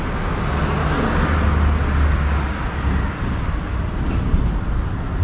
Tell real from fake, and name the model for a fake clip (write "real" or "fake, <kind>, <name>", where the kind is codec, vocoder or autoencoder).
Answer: real